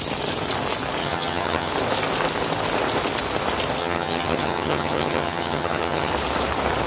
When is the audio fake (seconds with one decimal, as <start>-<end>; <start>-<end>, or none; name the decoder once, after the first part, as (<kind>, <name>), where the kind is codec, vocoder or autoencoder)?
1.0-1.7 (vocoder, HiFi-GAN); 3.8-6.1